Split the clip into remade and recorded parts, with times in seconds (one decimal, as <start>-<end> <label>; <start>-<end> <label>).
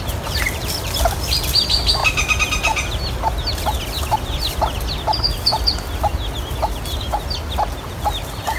0.0-8.6 recorded